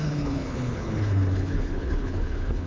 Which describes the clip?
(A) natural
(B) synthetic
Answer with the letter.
B